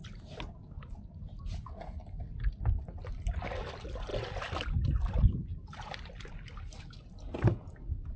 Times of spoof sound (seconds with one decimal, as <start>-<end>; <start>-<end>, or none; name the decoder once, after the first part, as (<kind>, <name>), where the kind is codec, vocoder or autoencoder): none